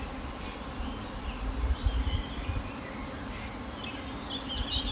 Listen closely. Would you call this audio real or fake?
real